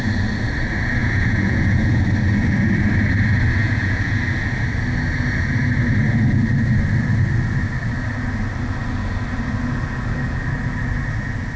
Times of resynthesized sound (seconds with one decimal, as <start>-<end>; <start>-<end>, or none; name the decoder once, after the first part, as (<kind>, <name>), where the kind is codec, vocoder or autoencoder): 1.0-2.0 (vocoder, Vocos); 3.6-4.2